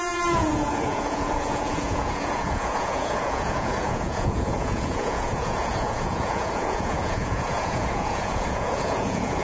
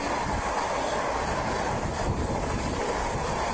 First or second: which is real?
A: second